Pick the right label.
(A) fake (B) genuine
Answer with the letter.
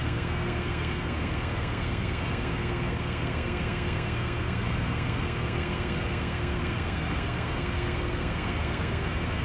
A